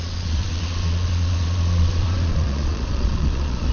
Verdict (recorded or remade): remade